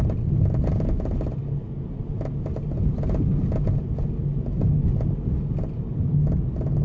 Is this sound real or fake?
real